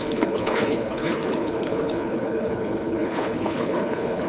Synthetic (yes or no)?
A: yes